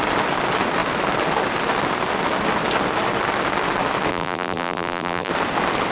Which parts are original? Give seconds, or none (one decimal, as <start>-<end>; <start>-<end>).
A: 0.0-4.1; 5.3-5.9